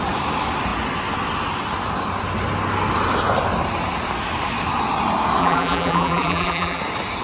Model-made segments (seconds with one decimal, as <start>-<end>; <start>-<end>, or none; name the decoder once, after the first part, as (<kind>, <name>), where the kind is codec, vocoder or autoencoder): 5.4-6.8 (vocoder, BigVGAN v2)